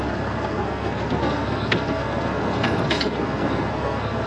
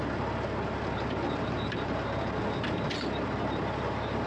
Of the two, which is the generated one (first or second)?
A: first